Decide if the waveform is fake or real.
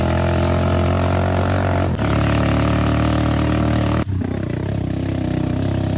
real